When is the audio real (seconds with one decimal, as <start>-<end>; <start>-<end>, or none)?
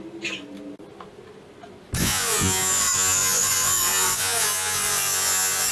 0.0-2.0